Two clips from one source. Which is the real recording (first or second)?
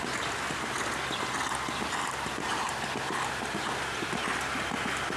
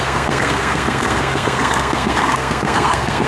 first